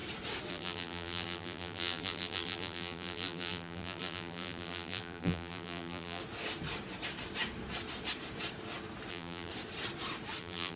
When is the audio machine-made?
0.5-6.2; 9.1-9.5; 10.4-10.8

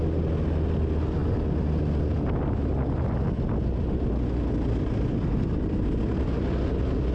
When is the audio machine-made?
none

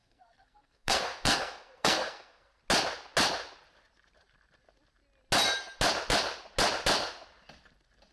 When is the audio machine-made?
0.0-2.6

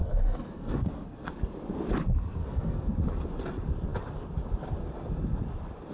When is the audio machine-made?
0.0-1.3; 2.4-3.0